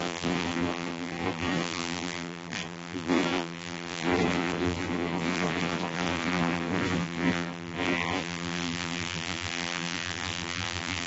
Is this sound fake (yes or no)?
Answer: yes